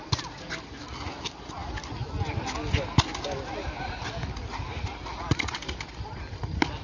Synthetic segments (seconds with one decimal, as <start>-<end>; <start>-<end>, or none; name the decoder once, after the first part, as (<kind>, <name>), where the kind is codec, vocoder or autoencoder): none